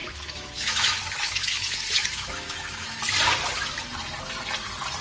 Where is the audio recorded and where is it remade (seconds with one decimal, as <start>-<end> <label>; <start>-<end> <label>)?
0.0-3.0 remade; 3.0-5.0 recorded